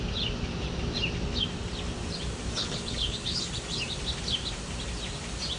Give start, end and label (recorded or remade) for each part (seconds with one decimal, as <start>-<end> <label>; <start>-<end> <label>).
0.0-2.6 recorded; 2.6-3.4 remade; 3.4-5.6 recorded